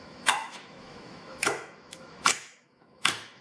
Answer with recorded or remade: remade